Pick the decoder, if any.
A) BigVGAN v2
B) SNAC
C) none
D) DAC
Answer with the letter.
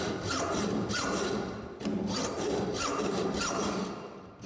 C